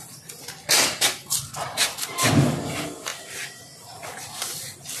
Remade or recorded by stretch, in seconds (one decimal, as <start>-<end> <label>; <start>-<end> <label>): 0.0-5.0 recorded